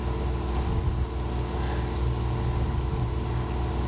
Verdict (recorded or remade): recorded